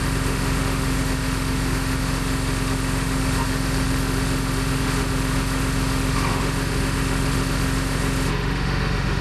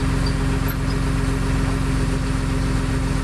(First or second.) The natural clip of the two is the second